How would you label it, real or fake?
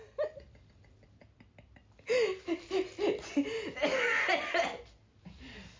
real